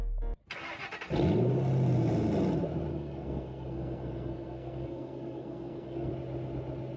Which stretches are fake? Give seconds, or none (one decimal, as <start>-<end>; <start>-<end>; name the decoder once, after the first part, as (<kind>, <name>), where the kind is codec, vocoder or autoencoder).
2.9-6.1 (codec, SNAC)